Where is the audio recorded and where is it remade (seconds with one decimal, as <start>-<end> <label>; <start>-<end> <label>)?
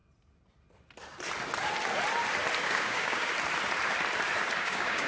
0.0-2.6 recorded; 2.6-3.3 remade; 3.3-4.6 recorded; 4.6-5.1 remade